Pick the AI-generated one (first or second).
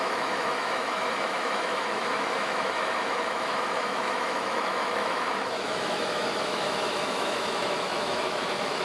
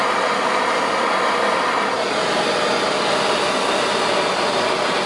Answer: first